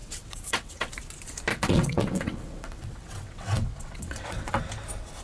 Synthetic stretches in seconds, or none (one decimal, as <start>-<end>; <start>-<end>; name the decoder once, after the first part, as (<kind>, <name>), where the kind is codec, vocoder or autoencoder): 0.0-0.9 (vocoder, WaveNeXt); 1.5-4.6